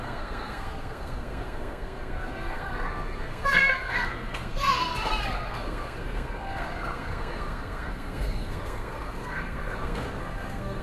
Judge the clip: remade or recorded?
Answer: remade